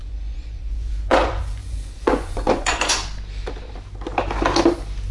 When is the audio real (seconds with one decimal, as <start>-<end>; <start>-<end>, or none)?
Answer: 3.0-5.1